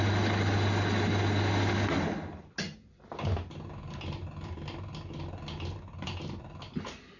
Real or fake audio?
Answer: real